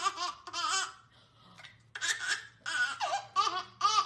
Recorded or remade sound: recorded